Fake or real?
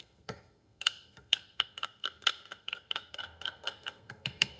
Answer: fake